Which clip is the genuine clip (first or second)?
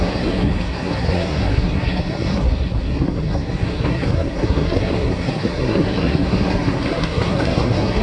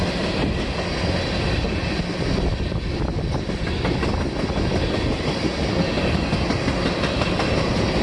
second